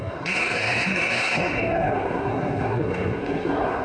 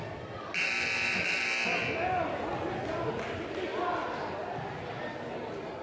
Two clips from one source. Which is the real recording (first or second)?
second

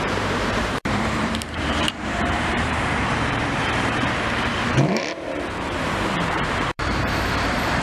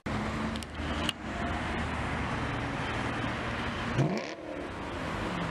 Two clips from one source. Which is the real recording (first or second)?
second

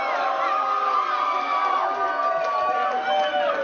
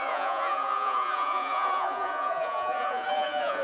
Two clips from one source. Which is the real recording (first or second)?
first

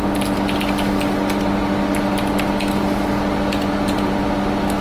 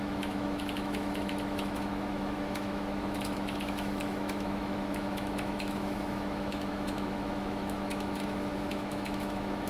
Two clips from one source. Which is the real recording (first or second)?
first